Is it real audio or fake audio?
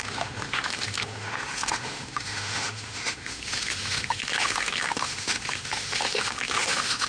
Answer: fake